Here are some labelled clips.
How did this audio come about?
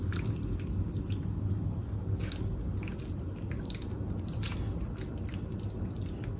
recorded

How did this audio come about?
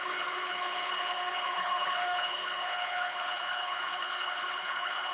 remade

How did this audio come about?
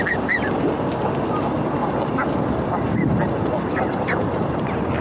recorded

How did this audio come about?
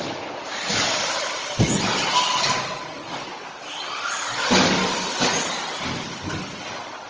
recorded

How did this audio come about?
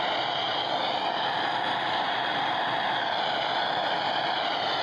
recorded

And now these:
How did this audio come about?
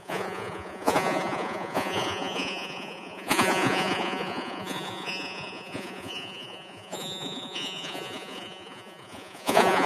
remade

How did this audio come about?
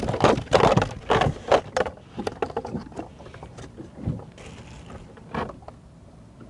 recorded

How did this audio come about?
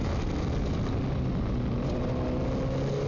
recorded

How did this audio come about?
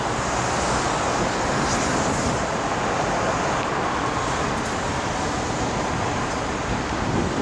recorded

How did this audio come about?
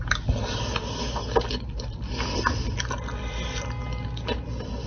recorded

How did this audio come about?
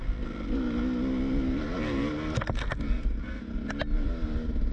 recorded